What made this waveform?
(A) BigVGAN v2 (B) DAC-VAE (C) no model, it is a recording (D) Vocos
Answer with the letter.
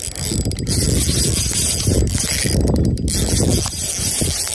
C